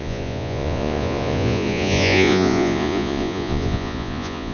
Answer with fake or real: fake